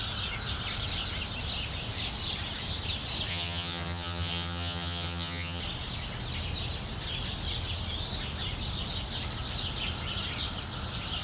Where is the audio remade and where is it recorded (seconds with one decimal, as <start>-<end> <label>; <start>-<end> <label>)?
0.0-3.3 recorded; 3.3-5.6 remade; 5.6-11.2 recorded